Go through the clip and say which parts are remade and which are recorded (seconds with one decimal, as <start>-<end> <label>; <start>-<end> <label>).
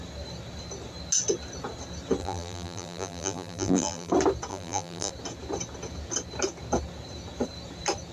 0.0-2.2 recorded; 2.2-4.1 remade; 4.1-4.5 recorded; 4.5-5.1 remade; 5.1-8.1 recorded